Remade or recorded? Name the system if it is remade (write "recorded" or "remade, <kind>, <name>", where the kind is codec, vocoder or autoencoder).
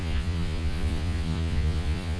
remade, vocoder, Vocos